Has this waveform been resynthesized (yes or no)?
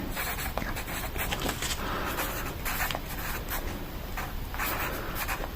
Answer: no